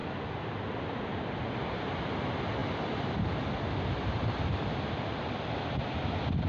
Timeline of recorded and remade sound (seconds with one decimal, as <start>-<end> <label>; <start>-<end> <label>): 0.0-1.1 recorded; 1.1-2.0 remade; 2.0-6.5 recorded